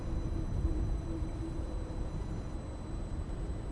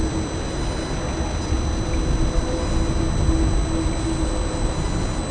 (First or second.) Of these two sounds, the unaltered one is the second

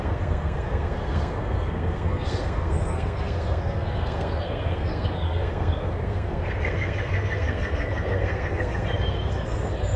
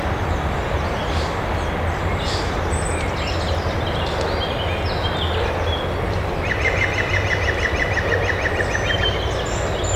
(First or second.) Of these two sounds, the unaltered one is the second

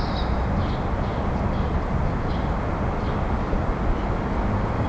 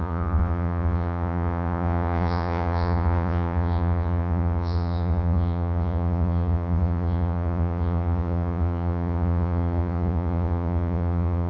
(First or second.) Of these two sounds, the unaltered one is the first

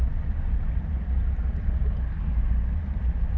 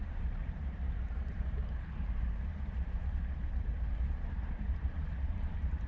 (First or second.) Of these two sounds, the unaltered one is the first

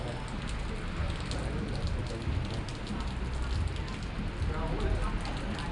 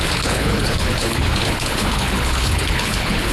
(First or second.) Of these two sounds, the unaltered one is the first